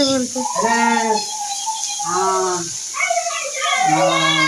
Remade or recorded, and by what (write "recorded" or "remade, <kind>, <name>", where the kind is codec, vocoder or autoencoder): recorded